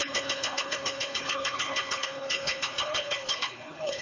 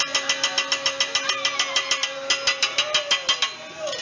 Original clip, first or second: second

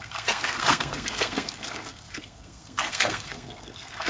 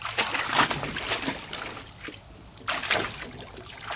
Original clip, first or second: second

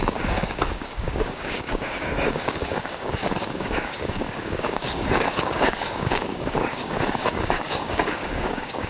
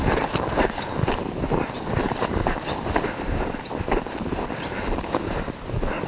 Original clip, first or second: second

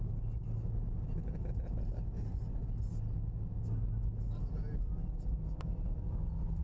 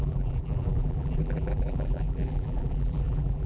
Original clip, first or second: first